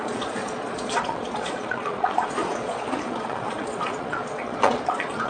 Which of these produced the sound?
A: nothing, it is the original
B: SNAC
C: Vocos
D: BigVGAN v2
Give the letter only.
C